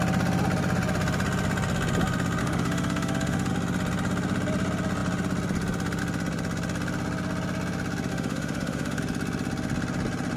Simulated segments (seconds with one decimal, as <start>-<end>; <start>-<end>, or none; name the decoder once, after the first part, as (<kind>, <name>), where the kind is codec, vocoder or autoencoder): 2.4-3.5 (autoencoder, DAC-VAE); 8.1-9.0